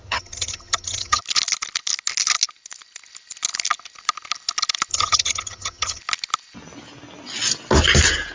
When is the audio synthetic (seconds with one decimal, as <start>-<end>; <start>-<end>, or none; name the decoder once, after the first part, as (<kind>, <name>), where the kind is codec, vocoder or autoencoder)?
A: 0.0-1.2 (vocoder, HiFi-GAN); 4.9-6.0